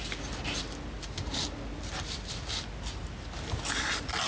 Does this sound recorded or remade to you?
recorded